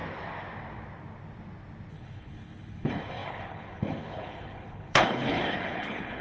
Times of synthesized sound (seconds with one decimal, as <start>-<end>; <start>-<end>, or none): 1.9-6.2